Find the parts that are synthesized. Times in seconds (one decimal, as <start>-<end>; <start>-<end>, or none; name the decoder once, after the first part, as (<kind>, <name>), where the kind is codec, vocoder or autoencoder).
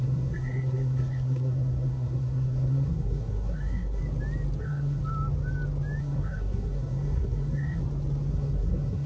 0.0-4.0 (codec, SNAC); 4.6-5.0; 6.0-7.8; 8.3-9.1